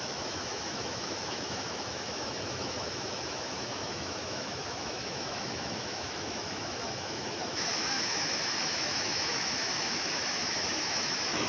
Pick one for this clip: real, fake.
fake